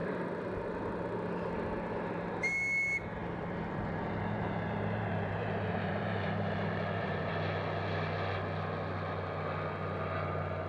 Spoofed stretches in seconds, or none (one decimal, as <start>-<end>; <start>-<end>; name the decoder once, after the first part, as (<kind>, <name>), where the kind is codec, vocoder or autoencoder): 0.0-0.8 (vocoder, BigVGAN v2); 3.2-7.3